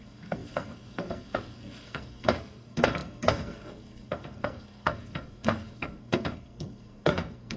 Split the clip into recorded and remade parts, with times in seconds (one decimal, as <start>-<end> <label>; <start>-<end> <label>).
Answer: 0.0-7.6 remade